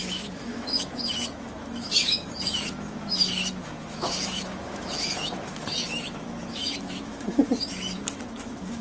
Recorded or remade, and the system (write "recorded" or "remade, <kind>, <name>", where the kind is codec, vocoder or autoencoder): remade, autoencoder, DAC-VAE